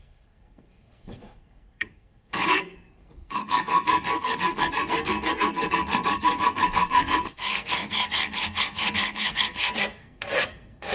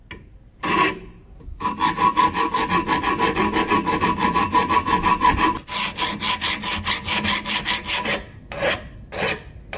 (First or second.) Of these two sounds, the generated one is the first